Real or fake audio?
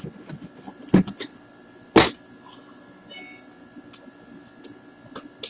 real